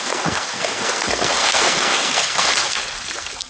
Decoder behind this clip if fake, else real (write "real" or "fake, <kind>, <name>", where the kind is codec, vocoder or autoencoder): fake, codec, SNAC